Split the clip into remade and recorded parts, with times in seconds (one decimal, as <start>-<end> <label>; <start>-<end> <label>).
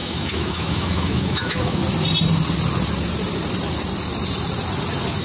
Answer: 0.0-1.8 remade; 1.8-5.2 recorded